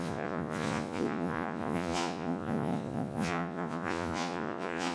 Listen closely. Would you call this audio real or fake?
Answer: fake